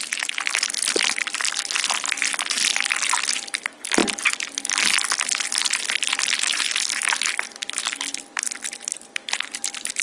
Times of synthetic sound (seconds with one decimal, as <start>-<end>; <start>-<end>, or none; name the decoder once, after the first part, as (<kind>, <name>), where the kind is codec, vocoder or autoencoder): none